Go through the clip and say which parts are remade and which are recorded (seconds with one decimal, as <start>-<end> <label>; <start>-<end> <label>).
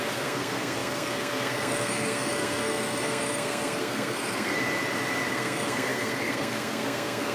0.0-4.6 remade; 4.6-5.3 recorded; 5.3-7.3 remade